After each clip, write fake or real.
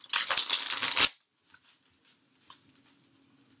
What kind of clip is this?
real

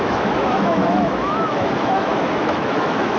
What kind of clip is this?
fake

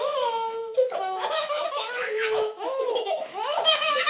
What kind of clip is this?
fake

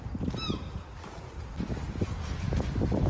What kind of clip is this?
real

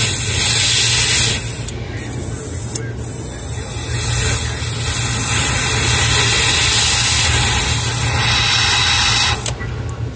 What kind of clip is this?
real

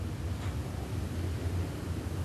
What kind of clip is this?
real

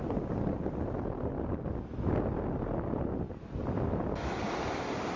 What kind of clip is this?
real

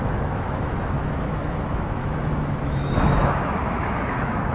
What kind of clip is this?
fake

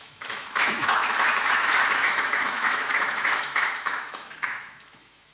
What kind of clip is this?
fake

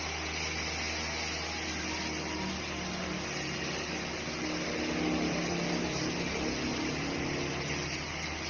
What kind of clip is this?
real